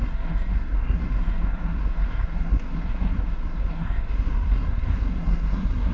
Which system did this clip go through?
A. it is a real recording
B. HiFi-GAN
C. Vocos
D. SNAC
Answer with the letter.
D